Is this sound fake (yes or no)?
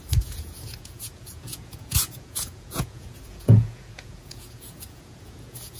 yes